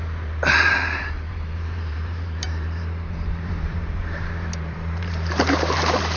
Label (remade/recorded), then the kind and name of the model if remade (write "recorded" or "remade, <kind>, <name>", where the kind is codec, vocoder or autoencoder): remade, vocoder, BigVGAN v2